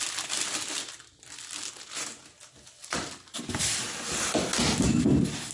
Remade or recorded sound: recorded